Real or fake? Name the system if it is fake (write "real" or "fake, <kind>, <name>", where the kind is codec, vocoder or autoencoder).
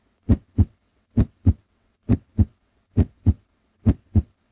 fake, vocoder, WaveNeXt